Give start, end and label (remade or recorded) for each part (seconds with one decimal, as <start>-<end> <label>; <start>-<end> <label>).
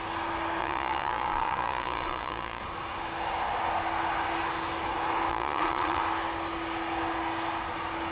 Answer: 0.0-0.6 recorded; 0.6-2.6 remade; 2.6-5.3 recorded; 5.3-6.0 remade; 6.0-8.1 recorded